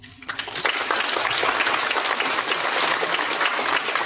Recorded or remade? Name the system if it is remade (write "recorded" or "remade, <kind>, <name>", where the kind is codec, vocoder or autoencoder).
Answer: recorded